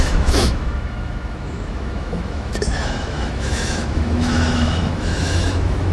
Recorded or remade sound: remade